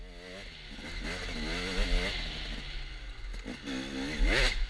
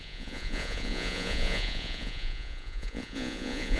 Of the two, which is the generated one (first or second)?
second